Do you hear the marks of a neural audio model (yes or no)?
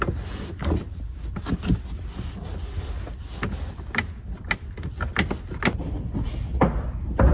no